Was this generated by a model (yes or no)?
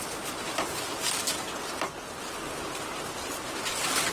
no